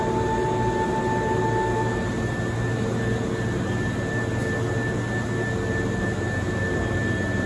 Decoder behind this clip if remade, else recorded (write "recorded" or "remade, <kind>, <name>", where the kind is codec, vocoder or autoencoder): recorded